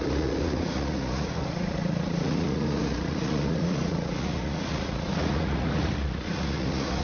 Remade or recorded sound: remade